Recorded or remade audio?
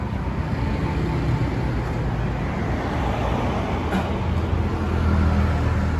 recorded